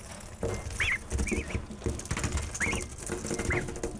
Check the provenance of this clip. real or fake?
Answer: real